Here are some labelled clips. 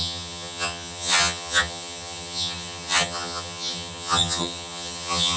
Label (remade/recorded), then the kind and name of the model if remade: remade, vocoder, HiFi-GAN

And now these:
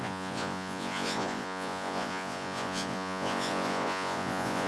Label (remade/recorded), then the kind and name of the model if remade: remade, vocoder, Vocos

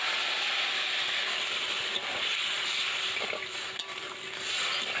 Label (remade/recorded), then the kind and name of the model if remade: recorded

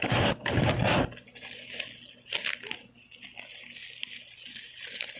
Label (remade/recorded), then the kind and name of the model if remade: recorded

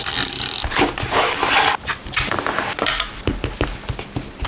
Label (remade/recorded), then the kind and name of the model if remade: recorded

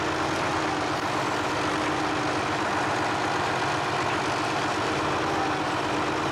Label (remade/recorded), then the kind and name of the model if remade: recorded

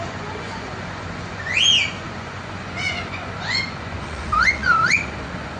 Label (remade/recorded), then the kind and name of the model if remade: remade, vocoder, Vocos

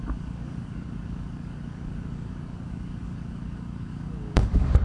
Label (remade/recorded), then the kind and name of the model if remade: remade, codec, DAC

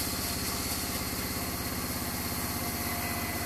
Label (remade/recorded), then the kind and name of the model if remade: recorded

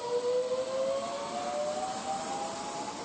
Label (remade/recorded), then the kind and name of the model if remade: recorded